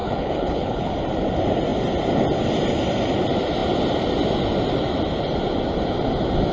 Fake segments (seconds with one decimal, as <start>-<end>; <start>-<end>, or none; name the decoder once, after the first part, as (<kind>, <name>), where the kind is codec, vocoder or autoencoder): 0.0-0.9 (codec, HILCodec)